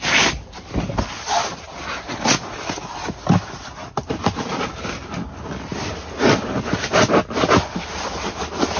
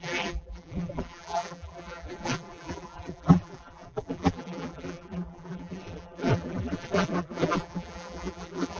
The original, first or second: first